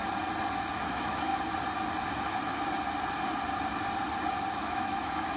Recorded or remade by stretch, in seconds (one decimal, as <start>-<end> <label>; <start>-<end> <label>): 0.0-0.8 recorded; 0.8-1.3 remade; 1.3-4.5 recorded; 4.5-5.4 remade